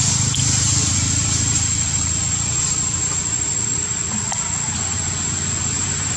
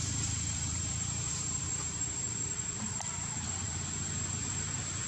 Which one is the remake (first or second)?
second